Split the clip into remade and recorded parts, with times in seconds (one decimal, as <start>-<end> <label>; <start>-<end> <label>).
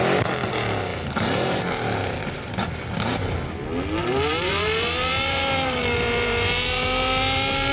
0.0-0.9 recorded; 0.9-2.6 remade; 2.6-4.0 recorded; 4.0-7.7 remade